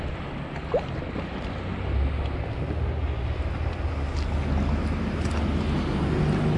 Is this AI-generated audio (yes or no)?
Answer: no